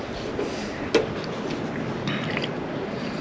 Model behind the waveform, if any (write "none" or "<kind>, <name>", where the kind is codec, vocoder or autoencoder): none